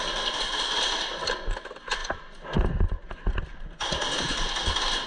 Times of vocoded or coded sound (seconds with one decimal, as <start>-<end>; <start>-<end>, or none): none